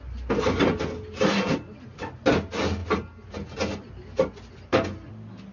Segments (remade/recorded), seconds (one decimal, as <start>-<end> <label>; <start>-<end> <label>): 0.0-5.5 recorded